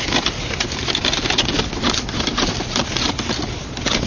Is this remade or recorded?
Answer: recorded